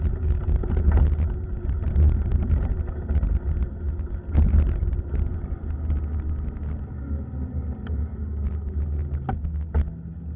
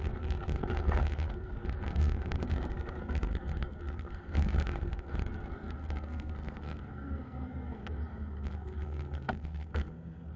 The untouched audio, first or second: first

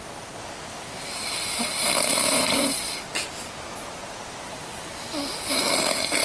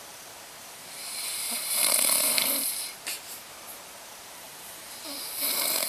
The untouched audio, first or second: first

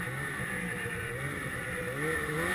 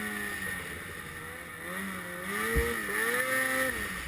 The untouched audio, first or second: second